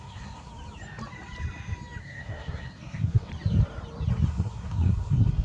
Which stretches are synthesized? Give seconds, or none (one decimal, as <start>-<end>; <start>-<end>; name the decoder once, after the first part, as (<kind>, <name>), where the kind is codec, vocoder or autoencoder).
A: 0.0-0.5 (codec, SNAC); 2.0-3.3; 4.3-5.4